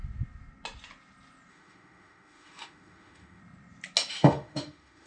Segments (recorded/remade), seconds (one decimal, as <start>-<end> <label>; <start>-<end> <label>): 0.0-1.5 recorded; 1.5-3.4 remade; 3.4-4.1 recorded; 4.1-5.1 remade